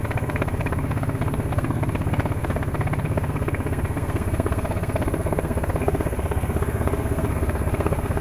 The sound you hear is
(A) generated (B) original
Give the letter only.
A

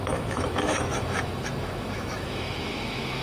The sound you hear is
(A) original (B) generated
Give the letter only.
B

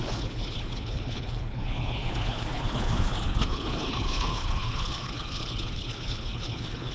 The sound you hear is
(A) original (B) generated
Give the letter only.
B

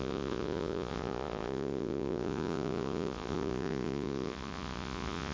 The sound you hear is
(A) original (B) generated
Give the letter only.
B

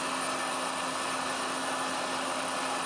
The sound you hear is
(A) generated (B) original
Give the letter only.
B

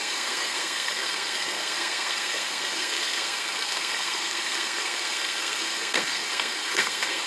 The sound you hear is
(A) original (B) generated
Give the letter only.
B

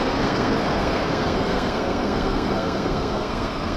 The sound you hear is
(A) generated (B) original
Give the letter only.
A